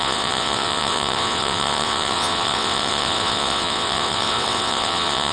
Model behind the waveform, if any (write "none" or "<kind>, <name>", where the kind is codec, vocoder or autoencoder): vocoder, WaveNeXt